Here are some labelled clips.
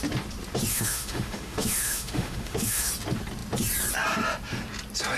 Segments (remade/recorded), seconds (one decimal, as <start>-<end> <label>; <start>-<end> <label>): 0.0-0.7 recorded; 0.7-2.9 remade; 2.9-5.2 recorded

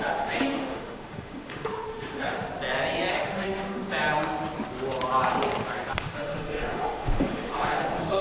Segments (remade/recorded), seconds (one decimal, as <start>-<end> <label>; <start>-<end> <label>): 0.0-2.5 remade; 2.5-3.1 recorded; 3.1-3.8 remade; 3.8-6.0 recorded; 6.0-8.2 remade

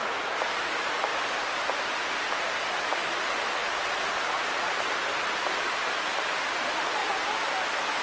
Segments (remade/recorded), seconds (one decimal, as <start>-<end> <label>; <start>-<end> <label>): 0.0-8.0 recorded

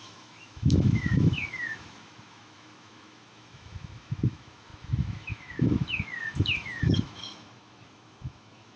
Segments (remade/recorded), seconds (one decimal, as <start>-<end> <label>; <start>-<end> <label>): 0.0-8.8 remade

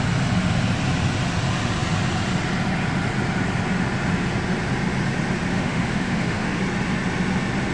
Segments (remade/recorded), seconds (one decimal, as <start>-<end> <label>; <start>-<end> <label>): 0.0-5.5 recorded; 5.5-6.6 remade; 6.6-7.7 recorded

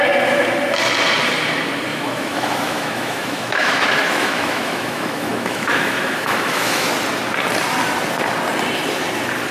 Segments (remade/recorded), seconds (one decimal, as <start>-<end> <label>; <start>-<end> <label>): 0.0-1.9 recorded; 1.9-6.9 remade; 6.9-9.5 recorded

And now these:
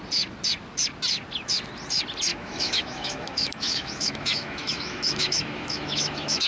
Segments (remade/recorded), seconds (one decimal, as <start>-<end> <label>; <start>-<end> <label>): 0.0-2.3 recorded; 2.3-6.5 remade